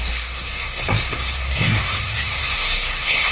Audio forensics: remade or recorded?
remade